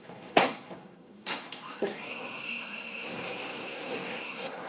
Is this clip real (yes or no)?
no